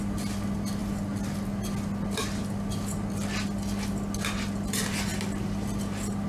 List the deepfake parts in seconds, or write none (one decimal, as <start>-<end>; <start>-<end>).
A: none